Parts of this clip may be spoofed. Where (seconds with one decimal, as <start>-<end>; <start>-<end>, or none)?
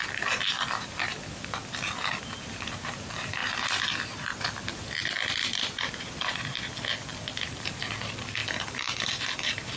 none